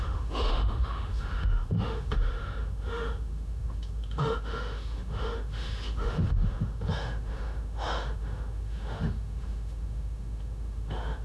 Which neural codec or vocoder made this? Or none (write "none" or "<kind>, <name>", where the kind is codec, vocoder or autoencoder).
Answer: autoencoder, DAC-VAE